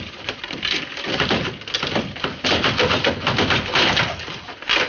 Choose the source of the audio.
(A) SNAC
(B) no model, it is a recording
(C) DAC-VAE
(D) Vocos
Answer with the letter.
B